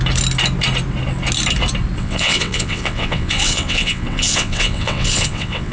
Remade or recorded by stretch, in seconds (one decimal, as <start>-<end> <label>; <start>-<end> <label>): 0.0-2.0 recorded; 2.0-5.7 remade